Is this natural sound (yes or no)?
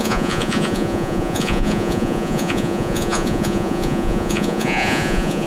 no